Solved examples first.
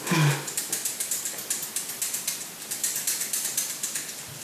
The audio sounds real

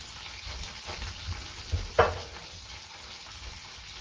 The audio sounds real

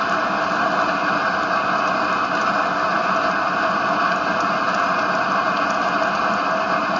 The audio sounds real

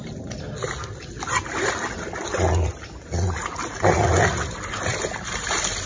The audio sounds real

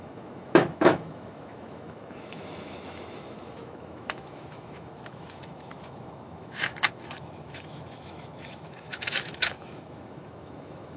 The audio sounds fake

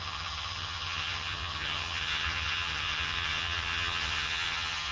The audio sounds fake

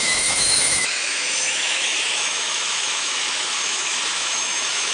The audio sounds fake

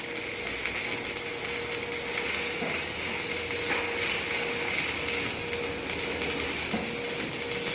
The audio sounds real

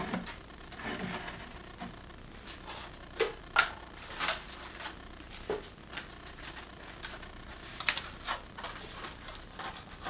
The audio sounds real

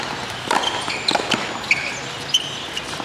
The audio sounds real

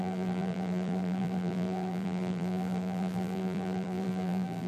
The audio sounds fake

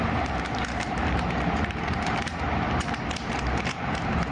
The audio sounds fake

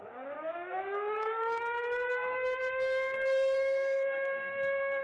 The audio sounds fake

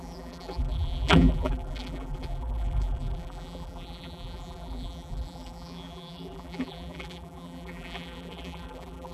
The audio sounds fake